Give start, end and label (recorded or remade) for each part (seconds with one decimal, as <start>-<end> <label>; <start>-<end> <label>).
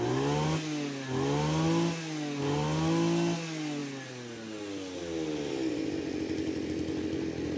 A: 0.0-7.6 recorded